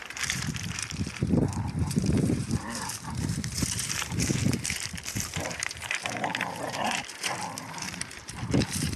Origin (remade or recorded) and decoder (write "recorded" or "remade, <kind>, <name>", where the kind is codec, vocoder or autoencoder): remade, vocoder, BigVGAN v2